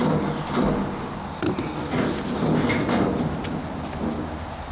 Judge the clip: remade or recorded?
recorded